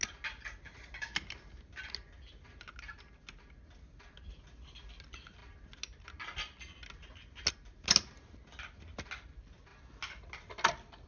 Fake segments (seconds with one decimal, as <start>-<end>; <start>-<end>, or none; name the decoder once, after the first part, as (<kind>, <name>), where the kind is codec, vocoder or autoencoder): none